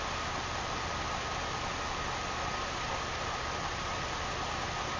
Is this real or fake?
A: real